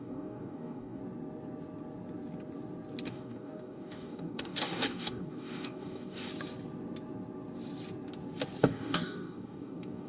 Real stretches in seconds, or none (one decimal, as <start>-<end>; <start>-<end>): 1.0-3.1; 6.3-8.6